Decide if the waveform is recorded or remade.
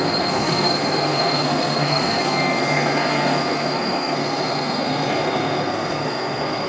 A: remade